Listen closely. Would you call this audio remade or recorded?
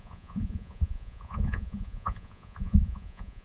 remade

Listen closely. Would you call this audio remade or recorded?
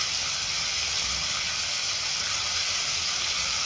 recorded